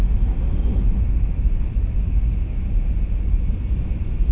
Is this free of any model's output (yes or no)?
yes